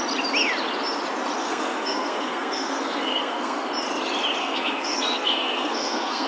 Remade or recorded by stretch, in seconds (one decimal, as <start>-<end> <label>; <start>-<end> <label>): 0.0-1.4 recorded; 1.4-3.7 remade; 3.7-4.4 recorded; 4.4-6.3 remade